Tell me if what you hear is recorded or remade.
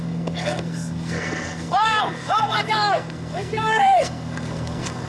remade